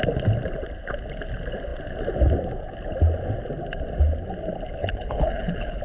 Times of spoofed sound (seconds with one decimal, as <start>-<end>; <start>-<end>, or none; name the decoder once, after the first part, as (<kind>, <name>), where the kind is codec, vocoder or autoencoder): 4.8-5.8 (codec, HILCodec)